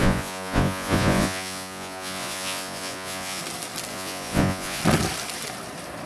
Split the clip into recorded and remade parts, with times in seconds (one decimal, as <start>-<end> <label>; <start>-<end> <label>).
0.0-3.4 remade; 3.4-3.9 recorded; 3.9-4.8 remade; 4.8-6.1 recorded